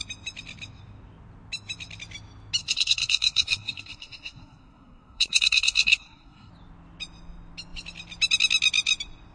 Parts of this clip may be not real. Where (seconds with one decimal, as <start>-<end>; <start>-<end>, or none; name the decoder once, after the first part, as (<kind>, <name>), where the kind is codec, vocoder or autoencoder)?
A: 2.6-6.5 (codec, SNAC)